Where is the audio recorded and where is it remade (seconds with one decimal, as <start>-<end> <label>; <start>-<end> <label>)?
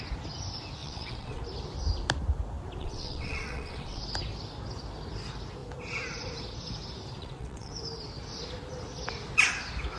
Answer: 0.0-0.8 recorded; 0.8-1.4 remade; 1.4-2.8 recorded; 2.8-4.0 remade; 4.0-7.2 recorded; 7.2-7.7 remade; 7.7-10.0 recorded